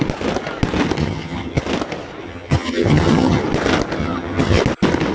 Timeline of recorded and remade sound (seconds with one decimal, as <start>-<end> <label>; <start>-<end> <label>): 0.0-1.0 recorded; 1.0-1.6 remade; 1.6-2.2 recorded; 2.2-3.4 remade; 3.4-4.0 recorded; 4.0-4.6 remade; 4.6-5.1 recorded